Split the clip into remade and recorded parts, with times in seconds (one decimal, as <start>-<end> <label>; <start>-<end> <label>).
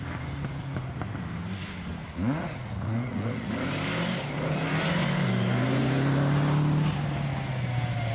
0.0-2.0 recorded; 2.0-3.5 remade; 3.5-8.1 recorded